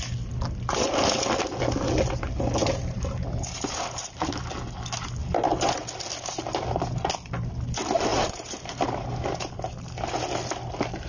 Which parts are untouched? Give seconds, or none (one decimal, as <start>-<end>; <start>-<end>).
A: 0.0-2.6; 4.4-8.1; 10.1-11.1